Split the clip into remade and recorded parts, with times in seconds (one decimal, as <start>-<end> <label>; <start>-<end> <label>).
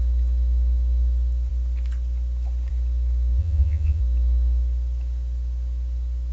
0.0-3.4 recorded; 3.4-4.0 remade; 4.0-6.3 recorded